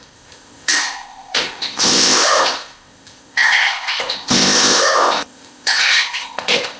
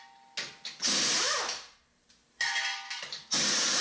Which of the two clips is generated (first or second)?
first